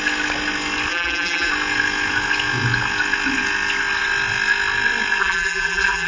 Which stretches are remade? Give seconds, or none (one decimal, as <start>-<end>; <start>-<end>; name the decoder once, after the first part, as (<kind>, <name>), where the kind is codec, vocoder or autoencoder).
0.9-1.5 (vocoder, BigVGAN v2); 5.2-6.1